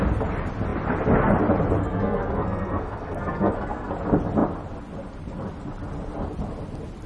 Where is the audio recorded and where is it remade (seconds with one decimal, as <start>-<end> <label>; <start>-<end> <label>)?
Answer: 0.0-1.8 recorded; 1.8-3.9 remade; 3.9-7.1 recorded